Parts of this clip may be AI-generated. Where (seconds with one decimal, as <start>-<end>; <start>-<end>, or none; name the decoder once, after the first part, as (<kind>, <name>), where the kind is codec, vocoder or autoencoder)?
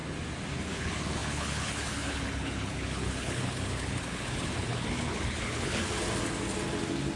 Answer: 0.5-5.8 (codec, HILCodec)